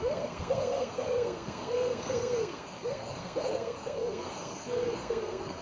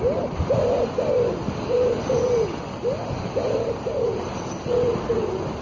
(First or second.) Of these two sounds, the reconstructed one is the first